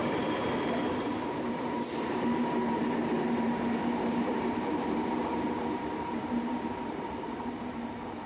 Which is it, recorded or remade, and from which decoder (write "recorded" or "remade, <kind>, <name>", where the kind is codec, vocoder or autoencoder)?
remade, vocoder, BigVGAN v2